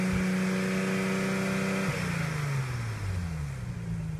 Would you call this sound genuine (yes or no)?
yes